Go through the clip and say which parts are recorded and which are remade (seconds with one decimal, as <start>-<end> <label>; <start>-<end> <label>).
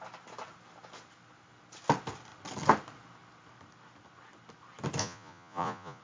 0.0-5.0 recorded; 5.0-6.0 remade